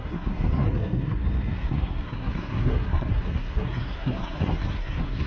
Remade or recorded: remade